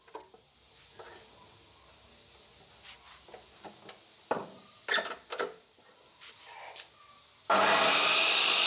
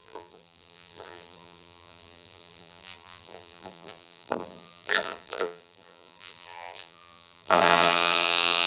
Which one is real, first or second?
first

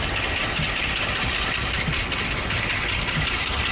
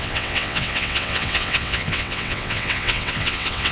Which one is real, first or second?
first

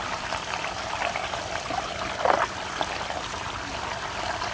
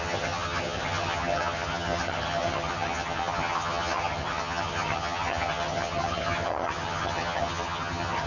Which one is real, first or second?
first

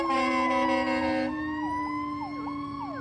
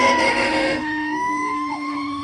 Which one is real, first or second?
first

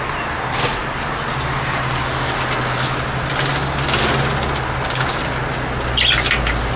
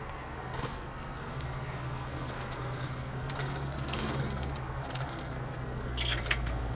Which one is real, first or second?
first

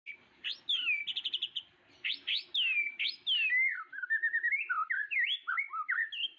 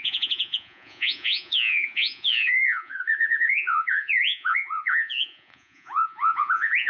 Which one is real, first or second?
first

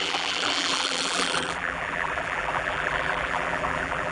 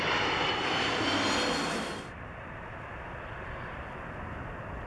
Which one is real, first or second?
second